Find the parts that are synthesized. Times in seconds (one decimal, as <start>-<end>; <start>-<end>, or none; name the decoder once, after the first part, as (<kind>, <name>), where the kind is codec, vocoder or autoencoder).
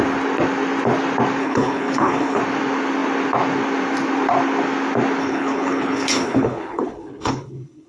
1.4-2.4 (codec, HILCodec); 5.2-7.9